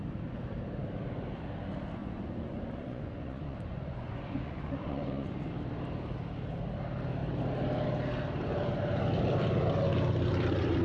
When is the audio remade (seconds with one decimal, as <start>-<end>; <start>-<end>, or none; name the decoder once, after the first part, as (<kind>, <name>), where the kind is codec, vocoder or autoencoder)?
2.0-5.5 (vocoder, Vocos)